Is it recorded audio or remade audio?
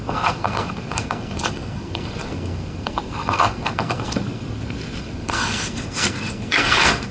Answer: remade